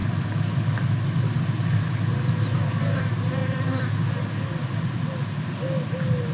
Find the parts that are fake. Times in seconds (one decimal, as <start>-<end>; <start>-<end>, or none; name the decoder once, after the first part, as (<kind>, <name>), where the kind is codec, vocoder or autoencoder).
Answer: none